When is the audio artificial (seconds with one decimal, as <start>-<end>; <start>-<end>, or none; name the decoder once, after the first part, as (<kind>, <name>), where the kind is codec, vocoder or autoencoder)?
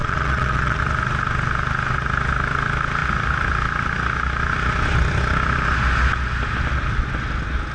0.0-0.8 (vocoder, Vocos)